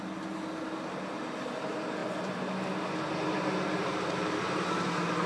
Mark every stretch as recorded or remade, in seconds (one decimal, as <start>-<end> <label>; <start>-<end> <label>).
0.0-5.3 recorded